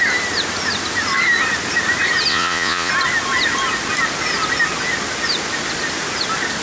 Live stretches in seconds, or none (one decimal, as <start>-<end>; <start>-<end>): 0.0-2.3; 2.9-6.6